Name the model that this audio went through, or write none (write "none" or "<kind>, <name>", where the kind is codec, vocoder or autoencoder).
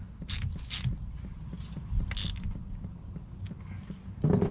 none